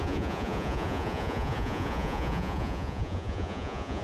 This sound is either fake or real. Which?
fake